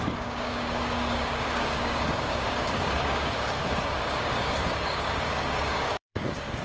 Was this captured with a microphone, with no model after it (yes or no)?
no